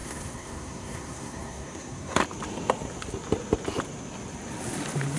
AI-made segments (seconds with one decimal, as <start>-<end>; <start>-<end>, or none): 0.0-2.2